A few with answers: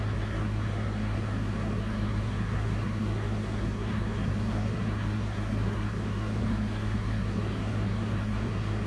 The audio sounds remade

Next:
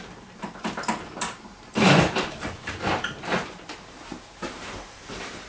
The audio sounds remade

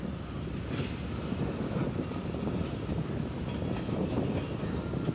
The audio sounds recorded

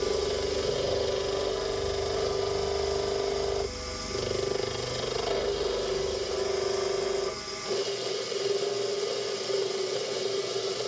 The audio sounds recorded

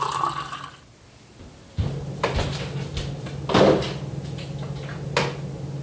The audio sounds recorded